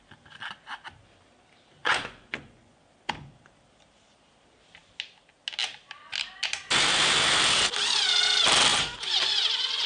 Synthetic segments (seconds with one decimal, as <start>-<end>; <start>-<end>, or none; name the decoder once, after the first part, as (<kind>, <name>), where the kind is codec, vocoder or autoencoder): 1.8-2.8 (vocoder, Vocos); 8.7-9.9